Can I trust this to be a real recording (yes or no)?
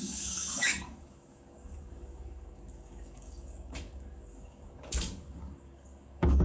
no